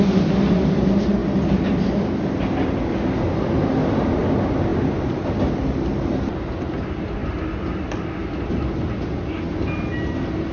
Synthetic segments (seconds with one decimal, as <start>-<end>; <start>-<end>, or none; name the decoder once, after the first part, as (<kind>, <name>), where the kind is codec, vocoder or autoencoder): none